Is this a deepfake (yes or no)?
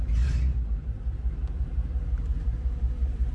yes